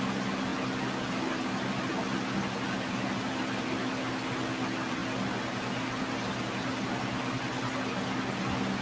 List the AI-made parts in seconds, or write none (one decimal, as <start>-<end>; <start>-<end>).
none